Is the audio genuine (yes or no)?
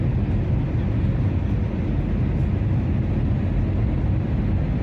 yes